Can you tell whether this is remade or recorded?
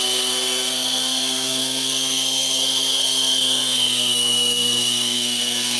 remade